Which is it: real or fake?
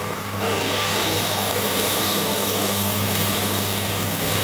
fake